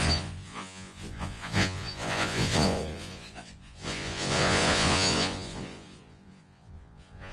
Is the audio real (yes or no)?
no